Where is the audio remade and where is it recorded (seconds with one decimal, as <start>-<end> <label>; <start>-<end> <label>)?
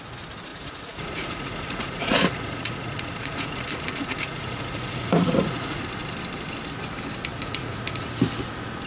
0.0-0.5 recorded; 0.5-5.8 remade; 5.8-7.3 recorded; 7.3-8.1 remade; 8.1-8.9 recorded